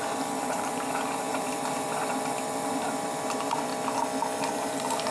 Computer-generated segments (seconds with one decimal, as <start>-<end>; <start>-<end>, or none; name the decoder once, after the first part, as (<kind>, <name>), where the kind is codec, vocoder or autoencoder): 0.0-3.7 (vocoder, BigVGAN v2); 4.5-5.1